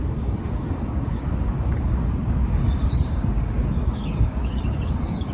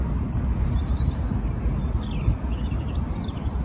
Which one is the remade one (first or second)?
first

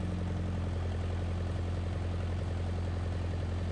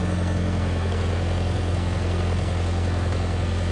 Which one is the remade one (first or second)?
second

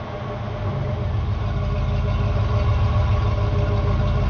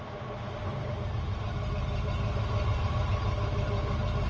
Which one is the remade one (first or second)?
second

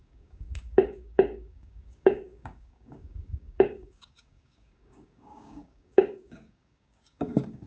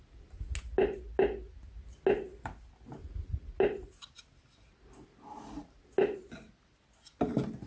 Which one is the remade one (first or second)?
first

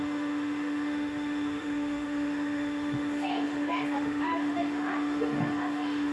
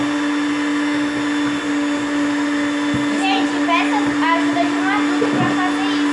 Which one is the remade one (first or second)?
first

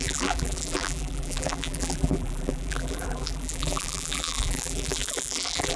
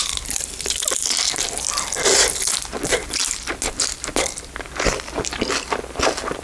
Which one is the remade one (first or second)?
first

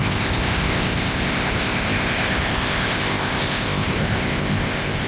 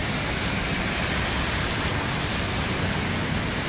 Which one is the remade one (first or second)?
first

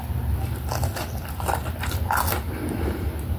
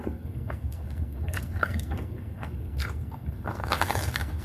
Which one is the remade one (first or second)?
second